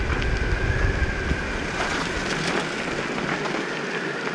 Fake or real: real